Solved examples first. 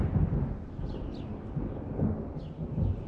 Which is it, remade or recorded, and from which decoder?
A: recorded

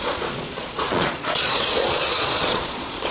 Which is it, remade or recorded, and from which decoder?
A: remade, vocoder, Vocos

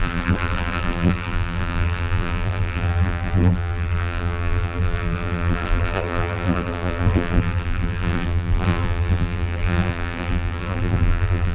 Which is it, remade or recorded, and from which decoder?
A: remade, vocoder, BigVGAN v2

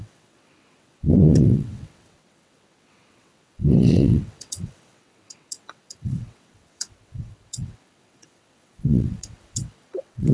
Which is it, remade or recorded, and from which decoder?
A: remade, vocoder, WaveNeXt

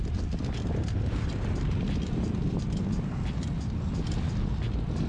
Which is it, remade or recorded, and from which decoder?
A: remade, vocoder, BigVGAN v2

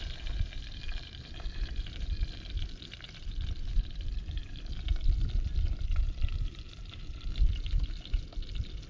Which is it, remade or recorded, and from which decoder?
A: remade, vocoder, BigVGAN v2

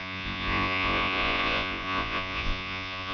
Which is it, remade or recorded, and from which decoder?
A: remade, vocoder, Vocos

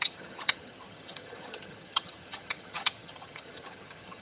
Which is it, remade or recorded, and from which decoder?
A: remade, vocoder, HiFi-GAN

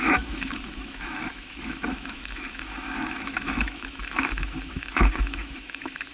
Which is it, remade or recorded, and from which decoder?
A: remade, autoencoder, DAC-VAE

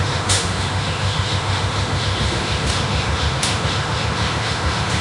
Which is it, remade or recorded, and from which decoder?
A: remade, autoencoder, DAC-VAE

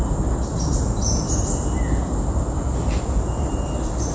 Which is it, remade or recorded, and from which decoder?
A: recorded